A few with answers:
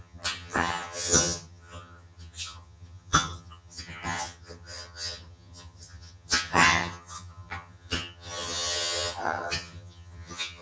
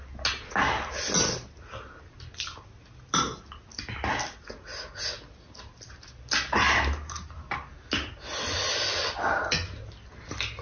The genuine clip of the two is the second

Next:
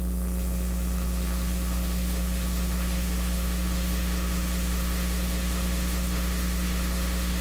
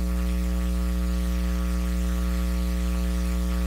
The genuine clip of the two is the second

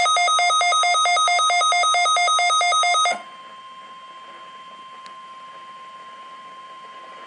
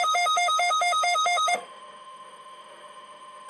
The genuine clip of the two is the first